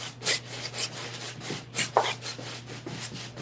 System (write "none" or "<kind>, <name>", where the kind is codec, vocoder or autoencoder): none